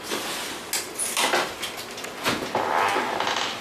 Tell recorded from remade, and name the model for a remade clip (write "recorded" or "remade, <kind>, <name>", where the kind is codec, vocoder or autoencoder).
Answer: recorded